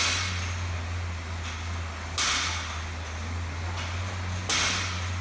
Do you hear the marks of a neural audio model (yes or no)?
no